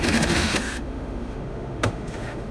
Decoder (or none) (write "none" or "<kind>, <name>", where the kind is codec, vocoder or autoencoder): autoencoder, DAC-VAE